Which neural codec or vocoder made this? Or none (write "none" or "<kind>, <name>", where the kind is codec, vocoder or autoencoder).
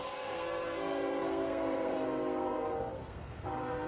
codec, SNAC